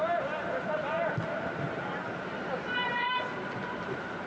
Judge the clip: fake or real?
real